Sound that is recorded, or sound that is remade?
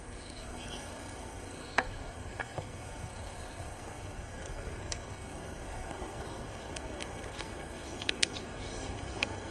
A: remade